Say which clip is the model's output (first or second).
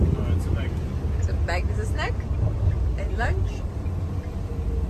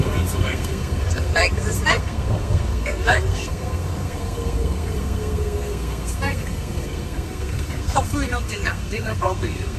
second